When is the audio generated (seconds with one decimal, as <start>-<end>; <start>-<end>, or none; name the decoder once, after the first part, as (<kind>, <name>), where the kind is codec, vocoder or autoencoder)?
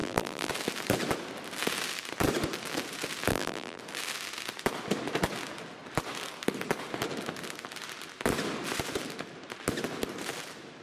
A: 0.0-0.5 (vocoder, BigVGAN v2); 3.3-3.8